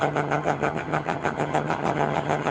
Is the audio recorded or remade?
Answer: remade